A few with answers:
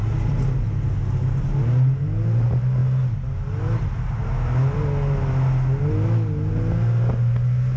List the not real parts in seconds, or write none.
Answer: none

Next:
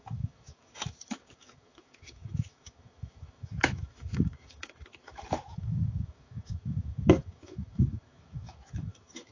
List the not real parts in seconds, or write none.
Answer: 0.0-9.3 (autoencoder, DAC-VAE)

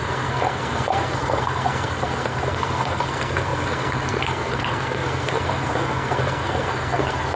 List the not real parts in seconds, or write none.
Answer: 0.0-7.4 (codec, SNAC)

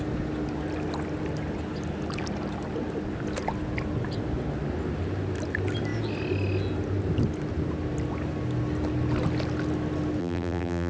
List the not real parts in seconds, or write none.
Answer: 10.2-10.9 (vocoder, BigVGAN v2)

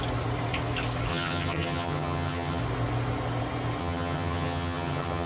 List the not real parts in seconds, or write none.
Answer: 1.1-2.6 (vocoder, HiFi-GAN); 3.8-5.3

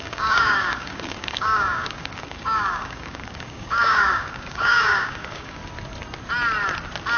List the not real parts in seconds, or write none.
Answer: 0.0-5.6 (codec, DAC)

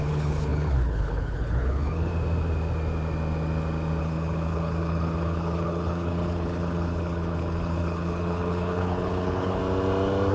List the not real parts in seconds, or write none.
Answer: 0.0-2.1 (codec, HILCodec); 4.0-9.6

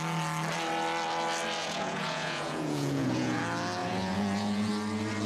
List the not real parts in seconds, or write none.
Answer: 1.6-3.4 (vocoder, Vocos); 3.8-4.7